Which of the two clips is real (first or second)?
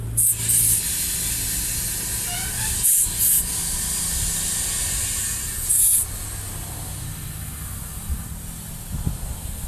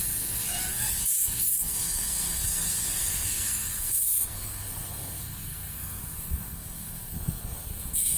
first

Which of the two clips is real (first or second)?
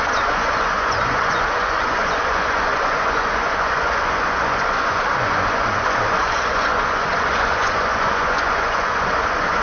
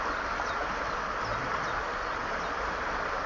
second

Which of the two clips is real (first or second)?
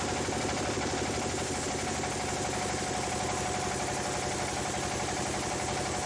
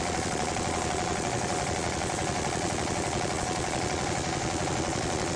first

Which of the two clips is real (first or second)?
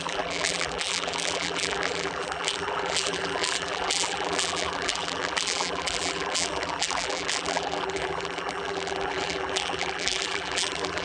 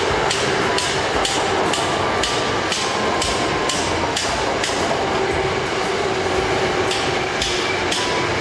second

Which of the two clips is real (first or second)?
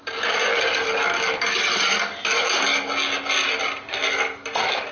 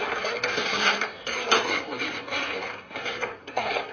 first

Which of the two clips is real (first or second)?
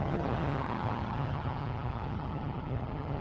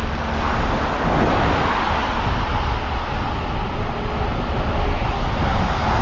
second